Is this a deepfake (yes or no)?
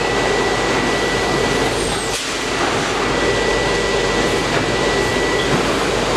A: no